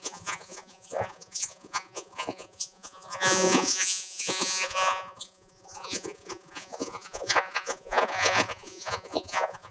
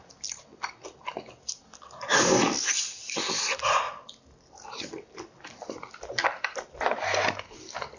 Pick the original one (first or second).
second